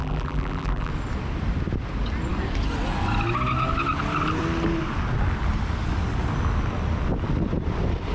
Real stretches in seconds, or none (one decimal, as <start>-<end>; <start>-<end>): 0.9-8.1